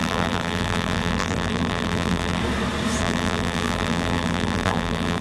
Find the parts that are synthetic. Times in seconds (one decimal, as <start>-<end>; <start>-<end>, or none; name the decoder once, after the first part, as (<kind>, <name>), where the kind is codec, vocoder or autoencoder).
0.0-2.4 (vocoder, BigVGAN v2); 3.0-5.2